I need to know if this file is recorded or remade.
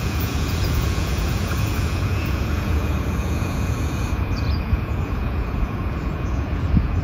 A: remade